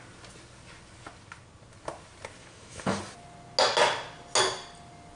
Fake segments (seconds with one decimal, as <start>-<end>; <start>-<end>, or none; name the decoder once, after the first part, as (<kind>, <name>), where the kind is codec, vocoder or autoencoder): 2.4-3.0 (autoencoder, DAC-VAE)